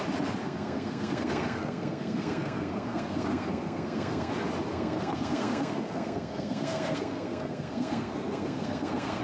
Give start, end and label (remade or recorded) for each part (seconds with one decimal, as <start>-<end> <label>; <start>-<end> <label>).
0.0-0.4 recorded; 0.4-4.3 remade; 4.3-4.7 recorded; 4.7-9.2 remade

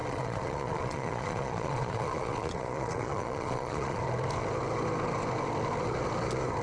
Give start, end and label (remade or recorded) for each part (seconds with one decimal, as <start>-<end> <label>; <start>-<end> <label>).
0.0-4.0 remade; 4.0-6.6 recorded

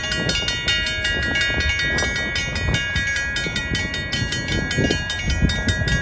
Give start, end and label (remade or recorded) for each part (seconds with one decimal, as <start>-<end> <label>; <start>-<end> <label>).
0.0-6.0 recorded

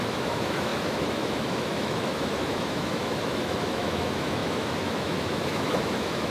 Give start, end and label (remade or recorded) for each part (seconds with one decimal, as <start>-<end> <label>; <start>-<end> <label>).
0.0-6.3 remade

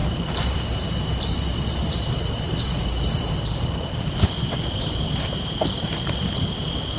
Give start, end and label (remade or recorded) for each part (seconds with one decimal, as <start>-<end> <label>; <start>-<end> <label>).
0.0-7.0 recorded

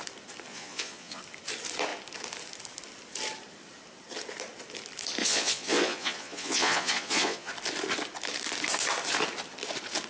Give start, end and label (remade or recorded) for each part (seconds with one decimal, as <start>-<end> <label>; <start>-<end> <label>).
0.0-0.5 recorded; 0.5-1.2 remade; 1.2-5.2 recorded; 5.2-7.5 remade; 7.5-10.1 recorded

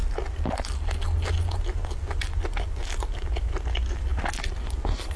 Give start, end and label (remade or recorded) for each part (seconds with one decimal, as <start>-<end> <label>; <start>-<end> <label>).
0.0-5.2 recorded

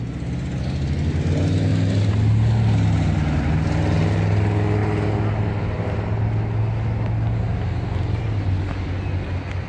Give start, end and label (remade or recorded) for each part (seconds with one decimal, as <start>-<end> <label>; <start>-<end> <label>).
0.0-9.7 recorded